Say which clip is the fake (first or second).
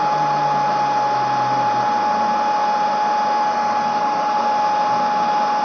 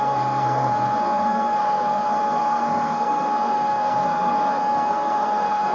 second